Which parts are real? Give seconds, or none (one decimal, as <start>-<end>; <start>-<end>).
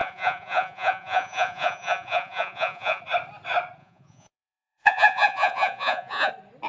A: 3.0-3.8; 6.3-6.7